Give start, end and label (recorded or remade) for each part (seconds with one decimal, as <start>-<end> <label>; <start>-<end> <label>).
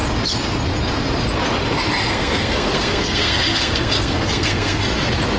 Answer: 0.0-2.0 recorded; 2.0-4.8 remade; 4.8-5.4 recorded